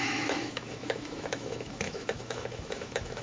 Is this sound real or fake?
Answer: fake